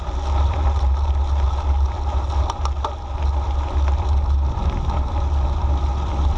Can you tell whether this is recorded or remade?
recorded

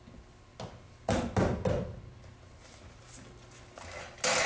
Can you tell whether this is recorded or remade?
recorded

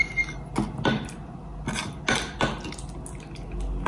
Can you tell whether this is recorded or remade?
recorded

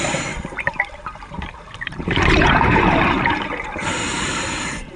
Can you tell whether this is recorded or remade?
remade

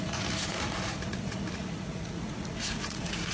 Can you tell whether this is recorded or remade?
remade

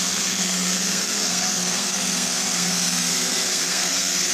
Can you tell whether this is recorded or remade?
remade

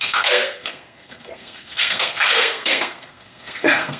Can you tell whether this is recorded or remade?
remade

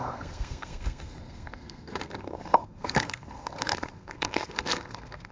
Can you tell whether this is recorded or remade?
remade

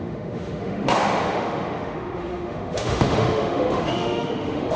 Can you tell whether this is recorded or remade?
remade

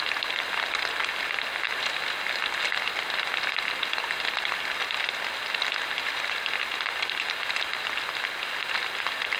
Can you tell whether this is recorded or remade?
recorded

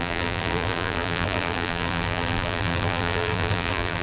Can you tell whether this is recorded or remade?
remade